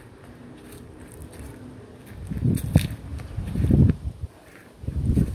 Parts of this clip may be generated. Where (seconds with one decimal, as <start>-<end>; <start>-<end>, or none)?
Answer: 0.0-1.2; 2.4-5.3